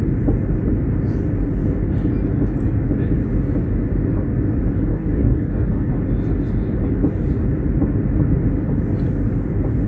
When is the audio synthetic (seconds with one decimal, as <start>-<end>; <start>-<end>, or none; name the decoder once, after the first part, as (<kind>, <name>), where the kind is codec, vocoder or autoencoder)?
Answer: 4.9-5.9 (codec, DAC)